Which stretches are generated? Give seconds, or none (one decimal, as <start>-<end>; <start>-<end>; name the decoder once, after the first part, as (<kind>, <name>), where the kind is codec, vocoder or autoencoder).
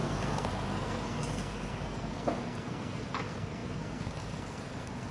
0.0-5.1 (codec, SNAC)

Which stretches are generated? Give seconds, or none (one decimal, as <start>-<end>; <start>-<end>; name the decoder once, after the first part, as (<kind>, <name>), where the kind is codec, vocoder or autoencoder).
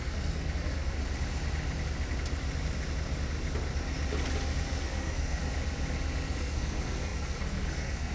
0.0-1.0 (codec, SNAC); 4.8-5.4; 6.3-8.1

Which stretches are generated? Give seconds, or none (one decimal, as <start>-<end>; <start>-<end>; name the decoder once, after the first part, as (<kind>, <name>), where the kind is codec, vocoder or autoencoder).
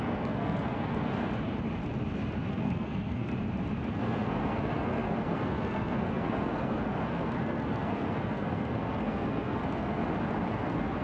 0.0-1.1 (codec, SNAC); 2.5-3.3; 3.9-10.0; 10.5-11.0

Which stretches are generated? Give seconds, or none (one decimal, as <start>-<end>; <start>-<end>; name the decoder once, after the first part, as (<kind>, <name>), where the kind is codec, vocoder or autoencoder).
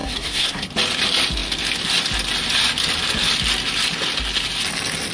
0.0-0.7 (codec, SNAC)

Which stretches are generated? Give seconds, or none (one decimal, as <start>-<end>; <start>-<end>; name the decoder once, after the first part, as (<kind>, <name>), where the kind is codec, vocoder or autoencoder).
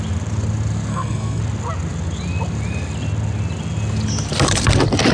0.9-1.4 (codec, SNAC)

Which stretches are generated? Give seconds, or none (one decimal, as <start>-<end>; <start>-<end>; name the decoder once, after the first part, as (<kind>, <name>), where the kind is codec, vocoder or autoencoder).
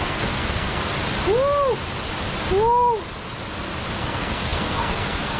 0.0-0.8 (codec, SNAC); 4.0-5.4